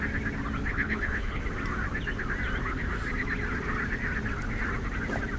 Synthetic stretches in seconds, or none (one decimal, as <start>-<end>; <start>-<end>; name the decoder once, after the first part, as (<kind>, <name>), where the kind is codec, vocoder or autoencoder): 0.7-1.4 (codec, HILCodec)

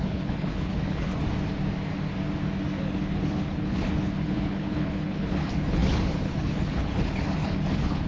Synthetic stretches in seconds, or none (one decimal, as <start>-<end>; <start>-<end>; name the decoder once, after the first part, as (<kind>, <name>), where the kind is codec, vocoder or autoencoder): 0.0-1.1 (codec, HILCodec); 2.8-8.1

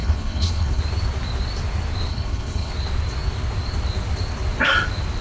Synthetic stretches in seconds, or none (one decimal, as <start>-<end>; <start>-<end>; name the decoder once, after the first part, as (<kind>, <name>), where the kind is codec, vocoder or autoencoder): 0.0-0.8 (codec, HILCodec); 2.1-2.7

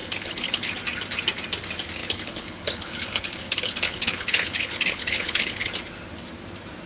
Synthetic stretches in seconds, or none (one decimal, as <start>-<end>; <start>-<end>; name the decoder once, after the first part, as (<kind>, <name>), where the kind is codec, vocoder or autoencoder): 0.0-0.7 (codec, HILCodec); 2.0-5.7

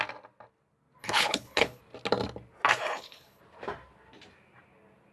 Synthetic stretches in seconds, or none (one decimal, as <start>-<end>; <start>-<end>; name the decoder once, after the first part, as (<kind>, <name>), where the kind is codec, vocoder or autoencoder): 1.0-1.8 (codec, HILCodec); 2.7-3.4

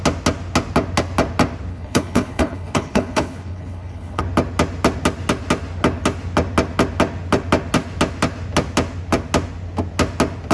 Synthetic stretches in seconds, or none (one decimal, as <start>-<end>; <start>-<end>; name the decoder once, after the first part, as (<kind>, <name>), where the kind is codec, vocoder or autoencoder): 1.7-4.2 (codec, HILCodec)

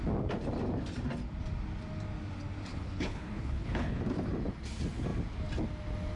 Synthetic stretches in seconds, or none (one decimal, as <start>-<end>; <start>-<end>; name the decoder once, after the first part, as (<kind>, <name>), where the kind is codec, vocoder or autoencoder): 2.7-4.0 (codec, HILCodec)